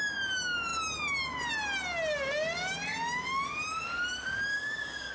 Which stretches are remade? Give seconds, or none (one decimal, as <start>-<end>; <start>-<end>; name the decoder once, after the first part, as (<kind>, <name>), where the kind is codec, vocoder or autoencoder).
4.5-5.1 (codec, DAC)